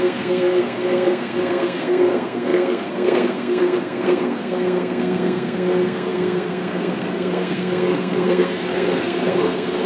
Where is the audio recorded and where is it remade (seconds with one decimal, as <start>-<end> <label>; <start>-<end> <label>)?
0.0-9.9 remade